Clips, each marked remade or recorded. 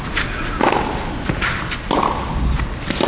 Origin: recorded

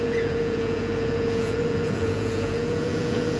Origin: remade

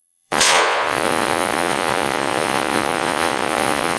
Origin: remade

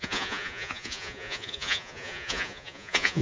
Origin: remade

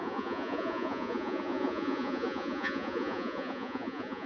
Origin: remade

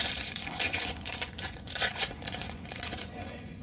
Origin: remade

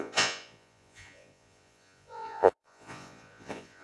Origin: remade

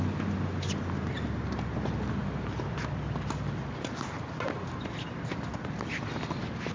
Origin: recorded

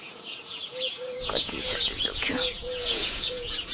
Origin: remade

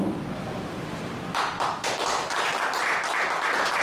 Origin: recorded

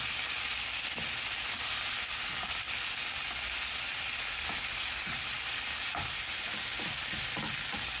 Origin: recorded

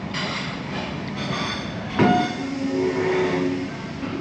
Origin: recorded